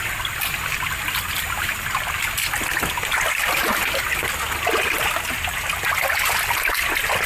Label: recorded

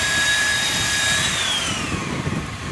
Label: remade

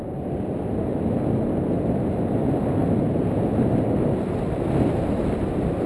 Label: recorded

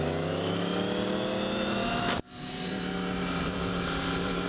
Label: recorded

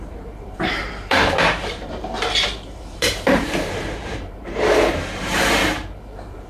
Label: remade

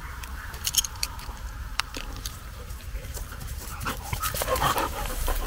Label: remade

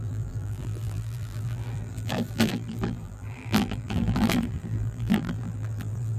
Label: remade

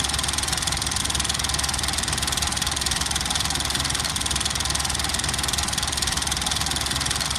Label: recorded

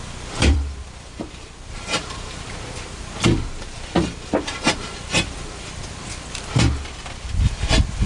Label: remade